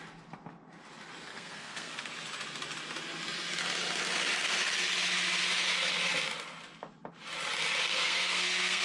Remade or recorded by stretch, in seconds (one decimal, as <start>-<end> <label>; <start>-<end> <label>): 0.0-1.3 recorded; 1.3-2.1 remade; 2.1-7.9 recorded; 7.9-8.8 remade